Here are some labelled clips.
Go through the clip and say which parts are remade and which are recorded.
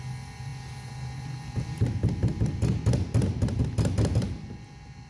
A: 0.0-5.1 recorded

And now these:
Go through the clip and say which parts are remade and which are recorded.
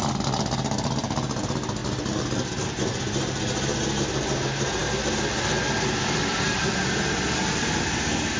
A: 0.0-8.4 recorded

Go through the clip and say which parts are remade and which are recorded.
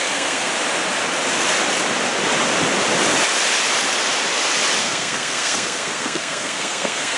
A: 0.0-0.5 remade; 0.5-4.8 recorded; 4.8-7.2 remade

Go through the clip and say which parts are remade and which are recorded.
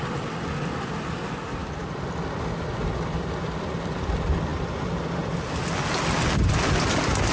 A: 0.0-7.3 recorded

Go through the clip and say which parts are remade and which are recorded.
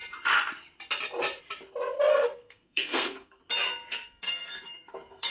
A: 0.0-2.1 recorded; 2.1-3.4 remade; 3.4-3.9 recorded; 3.9-5.3 remade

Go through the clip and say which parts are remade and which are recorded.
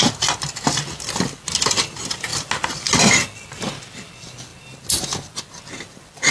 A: 0.0-6.3 recorded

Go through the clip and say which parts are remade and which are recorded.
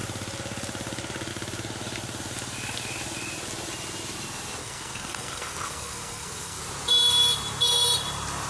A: 0.0-4.6 recorded; 4.6-6.6 remade; 6.6-8.5 recorded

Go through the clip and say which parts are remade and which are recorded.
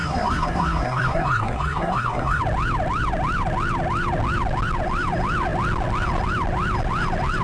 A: 0.0-2.4 remade; 2.4-7.4 recorded